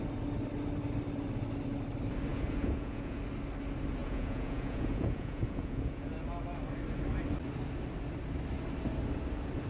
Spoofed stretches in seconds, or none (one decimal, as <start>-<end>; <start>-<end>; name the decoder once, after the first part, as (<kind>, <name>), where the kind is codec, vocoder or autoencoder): 2.3-3.2 (vocoder, Vocos); 4.0-6.1